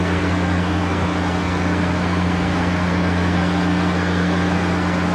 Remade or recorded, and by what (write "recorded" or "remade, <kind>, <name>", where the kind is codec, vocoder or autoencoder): remade, codec, SNAC